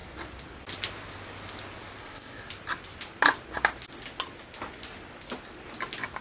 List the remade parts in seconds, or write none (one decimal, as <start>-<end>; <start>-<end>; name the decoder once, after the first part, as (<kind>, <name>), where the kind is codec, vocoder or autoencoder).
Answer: 2.0-2.4 (codec, ZipCodec)